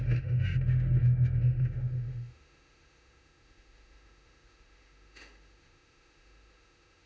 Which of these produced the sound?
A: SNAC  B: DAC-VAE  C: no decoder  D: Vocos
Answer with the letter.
B